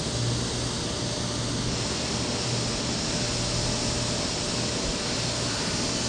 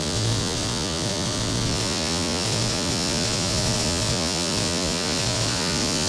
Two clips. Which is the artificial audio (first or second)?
second